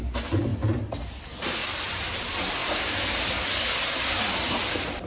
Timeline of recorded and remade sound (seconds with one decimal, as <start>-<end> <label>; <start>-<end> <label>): 0.0-1.6 recorded; 1.6-2.2 remade; 2.2-5.1 recorded